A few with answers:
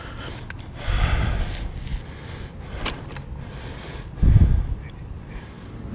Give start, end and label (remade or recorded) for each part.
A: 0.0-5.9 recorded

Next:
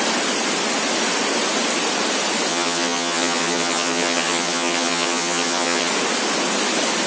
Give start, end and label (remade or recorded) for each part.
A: 0.0-2.5 recorded; 2.5-5.9 remade; 5.9-7.1 recorded

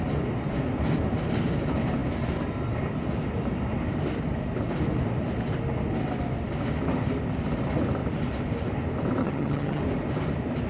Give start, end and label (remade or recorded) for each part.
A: 0.0-9.2 recorded; 9.2-9.8 remade; 9.8-10.7 recorded

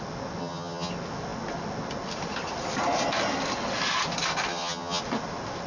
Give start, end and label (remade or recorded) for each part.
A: 0.0-0.4 recorded; 0.4-0.9 remade; 0.9-4.5 recorded; 4.5-5.0 remade; 5.0-5.7 recorded